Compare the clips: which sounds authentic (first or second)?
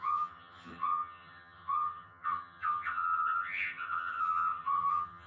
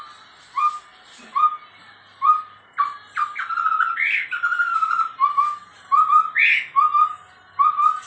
second